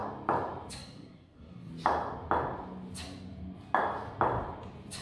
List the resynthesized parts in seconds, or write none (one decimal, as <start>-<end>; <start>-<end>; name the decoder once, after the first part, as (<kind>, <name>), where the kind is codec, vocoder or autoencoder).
0.7-1.7 (codec, SNAC)